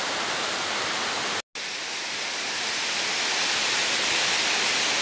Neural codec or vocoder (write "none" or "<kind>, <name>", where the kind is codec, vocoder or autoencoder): none